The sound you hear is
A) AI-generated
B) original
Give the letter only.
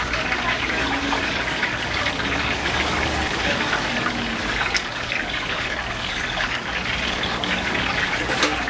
A